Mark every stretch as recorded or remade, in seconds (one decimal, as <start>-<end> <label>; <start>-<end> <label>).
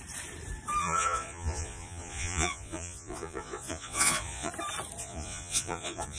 0.0-0.8 recorded; 0.8-4.5 remade; 4.5-5.0 recorded; 5.0-6.2 remade